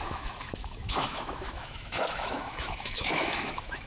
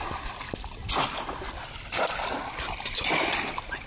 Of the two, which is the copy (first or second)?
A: first